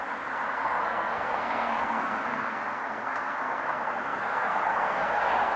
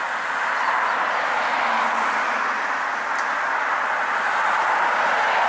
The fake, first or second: first